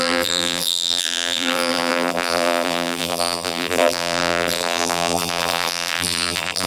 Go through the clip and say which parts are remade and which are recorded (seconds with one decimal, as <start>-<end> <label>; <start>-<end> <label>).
0.0-6.7 remade